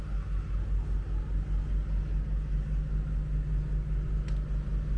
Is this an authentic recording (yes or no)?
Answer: yes